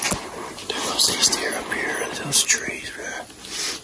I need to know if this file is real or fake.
real